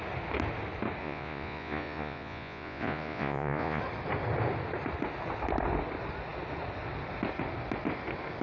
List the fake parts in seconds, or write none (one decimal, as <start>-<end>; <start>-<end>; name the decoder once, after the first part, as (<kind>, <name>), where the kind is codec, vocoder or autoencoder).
1.0-3.8 (vocoder, Vocos)